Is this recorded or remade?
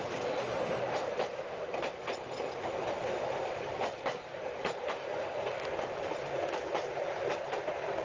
recorded